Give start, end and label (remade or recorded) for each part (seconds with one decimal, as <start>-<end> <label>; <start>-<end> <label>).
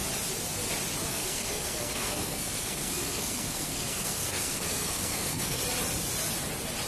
0.0-1.1 recorded; 1.1-5.6 remade; 5.6-6.9 recorded